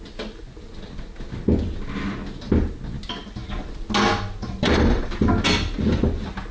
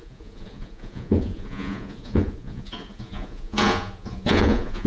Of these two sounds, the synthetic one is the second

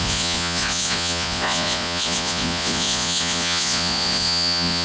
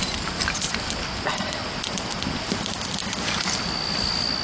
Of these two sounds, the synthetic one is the first